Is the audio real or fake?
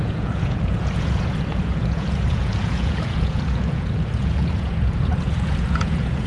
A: fake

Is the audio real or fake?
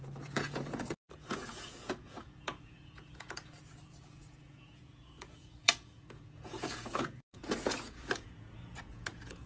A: fake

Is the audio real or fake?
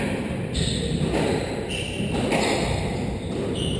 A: real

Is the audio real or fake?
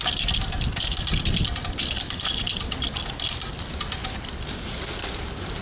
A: real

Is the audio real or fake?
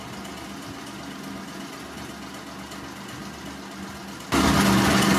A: real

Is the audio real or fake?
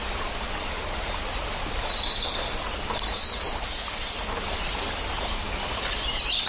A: real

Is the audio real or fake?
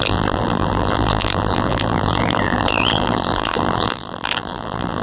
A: fake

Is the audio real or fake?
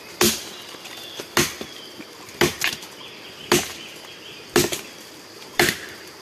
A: real